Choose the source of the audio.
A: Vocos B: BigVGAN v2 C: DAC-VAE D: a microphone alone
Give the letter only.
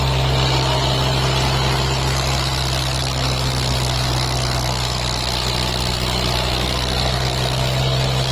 D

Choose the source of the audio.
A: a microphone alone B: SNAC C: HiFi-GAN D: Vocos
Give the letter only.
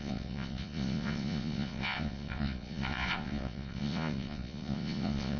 D